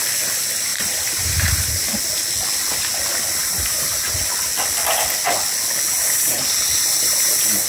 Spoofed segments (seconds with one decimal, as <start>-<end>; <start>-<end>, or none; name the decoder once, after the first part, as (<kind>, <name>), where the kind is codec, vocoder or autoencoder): 0.7-1.8 (vocoder, BigVGAN v2); 3.4-4.2